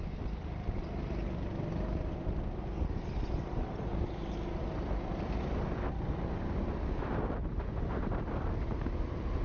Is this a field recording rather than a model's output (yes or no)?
yes